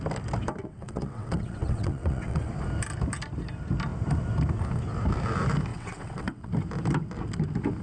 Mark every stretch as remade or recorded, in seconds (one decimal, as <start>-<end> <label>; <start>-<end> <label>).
0.0-0.6 recorded; 0.6-2.5 remade; 2.5-5.7 recorded; 5.7-6.5 remade; 6.5-7.8 recorded